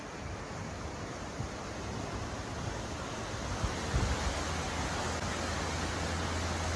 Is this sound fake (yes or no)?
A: no